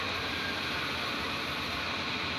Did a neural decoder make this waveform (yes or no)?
yes